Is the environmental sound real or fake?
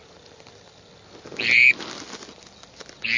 real